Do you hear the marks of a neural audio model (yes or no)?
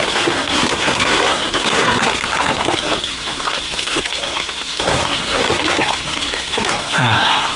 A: yes